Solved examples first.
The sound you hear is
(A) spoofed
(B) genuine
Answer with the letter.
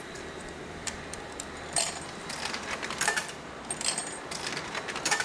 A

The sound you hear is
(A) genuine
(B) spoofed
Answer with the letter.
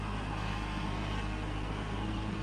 B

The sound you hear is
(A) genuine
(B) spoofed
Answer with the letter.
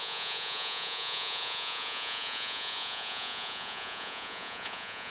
B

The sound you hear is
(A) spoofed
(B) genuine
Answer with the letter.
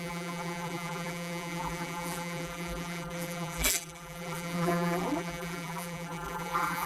A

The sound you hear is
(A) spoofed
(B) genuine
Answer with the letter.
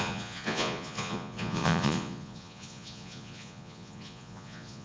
A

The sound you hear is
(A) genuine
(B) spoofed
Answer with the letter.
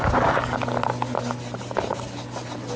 A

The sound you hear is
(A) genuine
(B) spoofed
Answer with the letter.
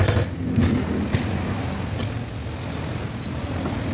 A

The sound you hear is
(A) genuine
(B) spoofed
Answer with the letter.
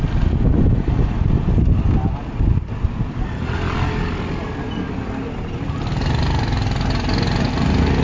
A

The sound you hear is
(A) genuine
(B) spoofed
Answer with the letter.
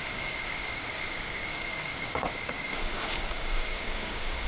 B